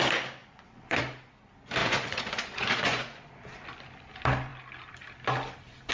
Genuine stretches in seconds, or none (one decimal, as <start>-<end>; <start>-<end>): 0.0-0.4; 1.0-1.8; 3.3-5.9